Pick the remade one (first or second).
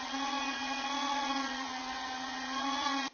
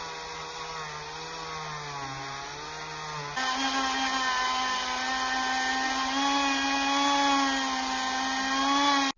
first